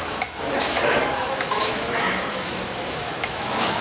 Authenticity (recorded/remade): remade